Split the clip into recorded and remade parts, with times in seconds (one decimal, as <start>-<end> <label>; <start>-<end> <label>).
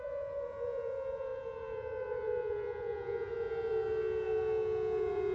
0.0-5.3 remade